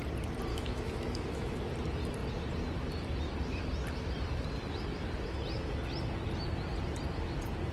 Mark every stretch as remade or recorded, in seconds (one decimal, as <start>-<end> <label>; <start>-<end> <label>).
0.0-0.5 recorded; 0.5-1.7 remade; 1.7-7.7 recorded